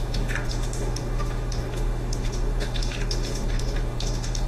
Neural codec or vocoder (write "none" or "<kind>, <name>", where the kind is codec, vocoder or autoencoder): autoencoder, DAC-VAE